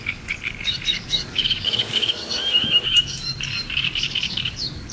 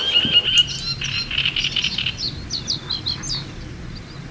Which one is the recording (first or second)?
second